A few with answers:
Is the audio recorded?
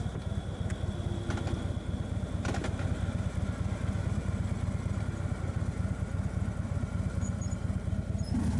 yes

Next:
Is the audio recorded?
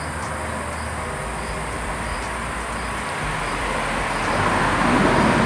yes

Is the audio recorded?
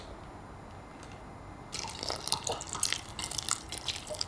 yes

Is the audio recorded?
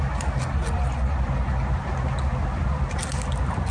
yes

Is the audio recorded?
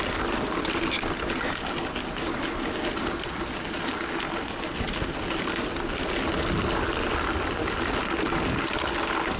yes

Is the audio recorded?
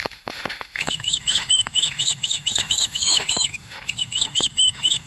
no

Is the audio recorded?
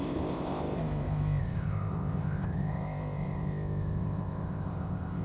no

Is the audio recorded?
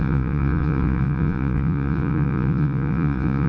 no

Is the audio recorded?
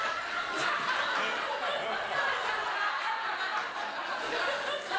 yes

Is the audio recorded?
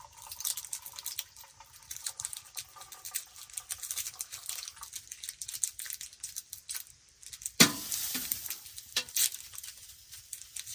no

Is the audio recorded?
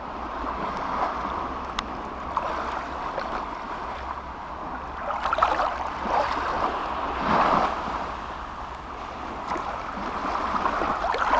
yes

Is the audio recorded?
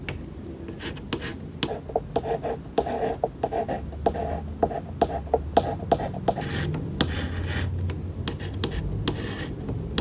yes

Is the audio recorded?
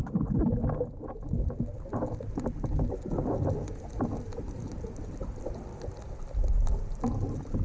yes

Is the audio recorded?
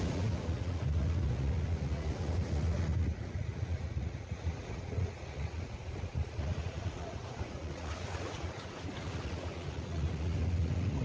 no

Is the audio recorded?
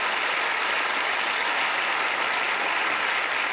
yes